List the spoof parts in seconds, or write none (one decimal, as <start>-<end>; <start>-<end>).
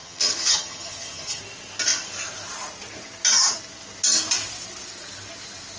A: 0.0-1.4